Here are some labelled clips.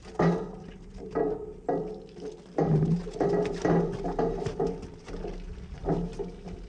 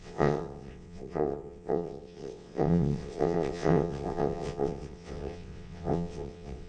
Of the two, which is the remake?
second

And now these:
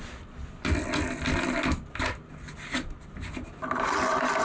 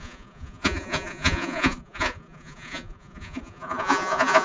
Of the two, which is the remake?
second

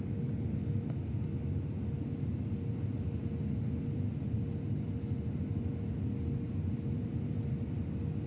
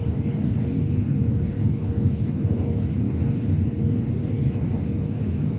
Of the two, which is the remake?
second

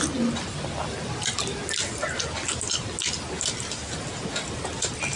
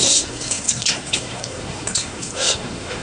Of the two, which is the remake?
second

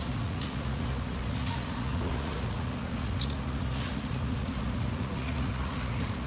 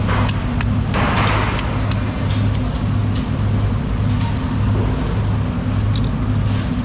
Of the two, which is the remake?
first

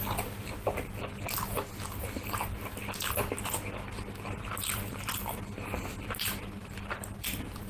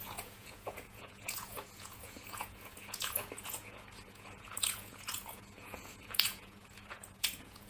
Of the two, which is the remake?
second